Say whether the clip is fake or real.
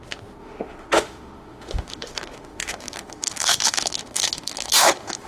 fake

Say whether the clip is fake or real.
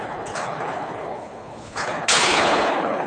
fake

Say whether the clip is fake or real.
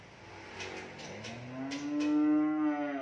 real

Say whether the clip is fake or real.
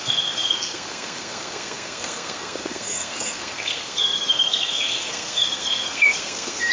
fake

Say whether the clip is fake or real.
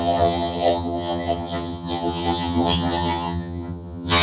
fake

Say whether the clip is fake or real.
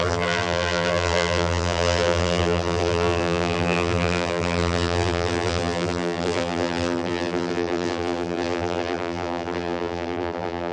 fake